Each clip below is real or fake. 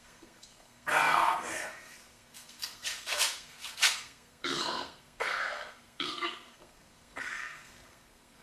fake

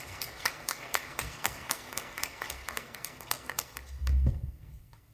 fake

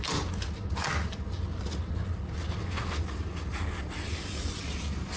real